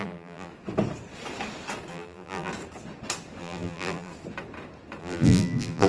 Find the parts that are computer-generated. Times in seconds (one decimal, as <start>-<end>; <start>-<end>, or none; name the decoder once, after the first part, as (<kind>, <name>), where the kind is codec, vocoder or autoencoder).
0.0-0.5 (vocoder, BigVGAN v2); 1.9-2.5; 3.4-4.1; 5.0-5.9